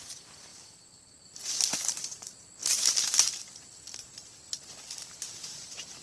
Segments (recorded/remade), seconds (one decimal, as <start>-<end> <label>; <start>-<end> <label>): 0.0-0.5 recorded; 0.5-2.1 remade; 2.1-2.6 recorded; 2.6-3.5 remade; 3.5-6.0 recorded